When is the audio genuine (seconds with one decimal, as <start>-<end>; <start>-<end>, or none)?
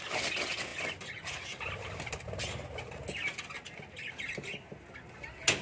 0.0-5.6